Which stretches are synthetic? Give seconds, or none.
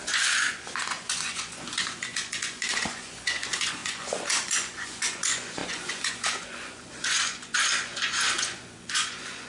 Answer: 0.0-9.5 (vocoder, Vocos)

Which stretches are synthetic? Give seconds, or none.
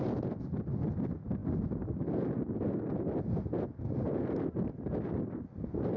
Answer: none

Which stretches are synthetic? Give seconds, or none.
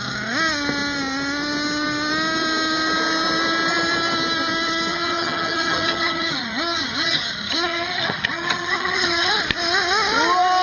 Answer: 4.9-9.3 (vocoder, HiFi-GAN)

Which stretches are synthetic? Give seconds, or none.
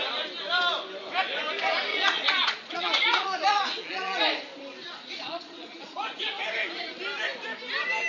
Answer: 1.9-4.2 (vocoder, Vocos); 4.8-6.3